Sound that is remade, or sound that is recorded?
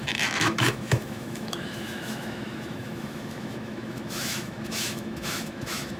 remade